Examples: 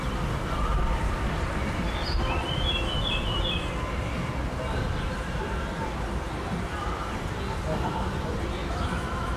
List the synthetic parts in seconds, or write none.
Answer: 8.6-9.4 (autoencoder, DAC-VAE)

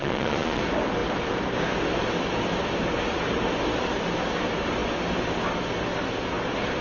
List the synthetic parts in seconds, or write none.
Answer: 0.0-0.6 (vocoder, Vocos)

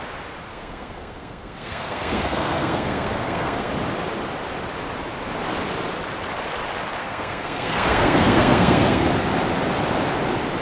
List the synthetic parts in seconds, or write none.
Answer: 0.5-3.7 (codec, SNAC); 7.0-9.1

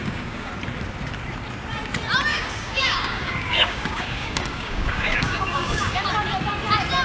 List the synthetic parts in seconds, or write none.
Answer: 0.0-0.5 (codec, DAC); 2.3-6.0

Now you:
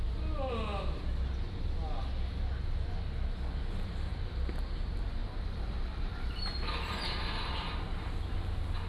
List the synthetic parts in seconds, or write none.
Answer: 5.2-8.0 (vocoder, BigVGAN v2)